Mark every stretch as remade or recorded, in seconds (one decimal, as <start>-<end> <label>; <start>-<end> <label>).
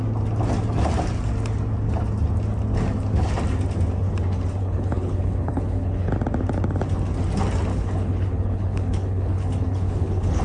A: 0.0-4.6 recorded; 4.6-6.1 remade; 6.1-7.7 recorded; 7.7-10.4 remade